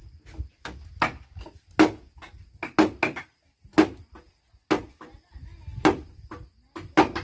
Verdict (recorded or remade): recorded